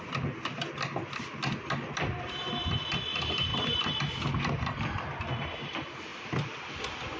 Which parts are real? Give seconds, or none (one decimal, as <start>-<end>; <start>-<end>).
0.0-3.5; 4.0-7.2